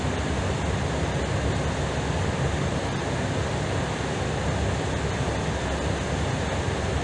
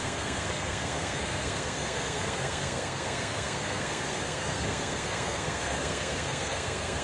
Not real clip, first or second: second